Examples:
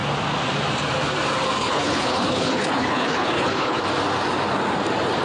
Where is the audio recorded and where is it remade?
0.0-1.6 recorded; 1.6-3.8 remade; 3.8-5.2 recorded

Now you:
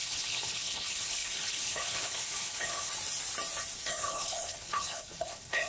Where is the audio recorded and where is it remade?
0.0-2.9 remade; 2.9-3.8 recorded; 3.8-5.7 remade

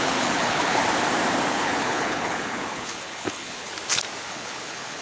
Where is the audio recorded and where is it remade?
0.0-0.8 remade; 0.8-1.5 recorded; 1.5-3.7 remade; 3.7-4.3 recorded; 4.3-5.0 remade